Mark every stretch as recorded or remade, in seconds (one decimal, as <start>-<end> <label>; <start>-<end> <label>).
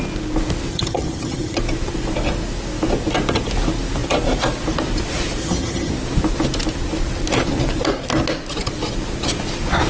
0.0-0.7 recorded; 0.7-1.6 remade; 1.6-5.4 recorded; 5.4-5.9 remade; 5.9-9.9 recorded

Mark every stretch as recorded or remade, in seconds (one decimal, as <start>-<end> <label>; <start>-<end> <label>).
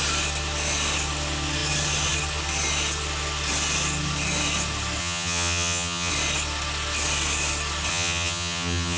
0.0-5.0 recorded; 5.0-6.1 remade; 6.1-7.9 recorded; 7.9-9.0 remade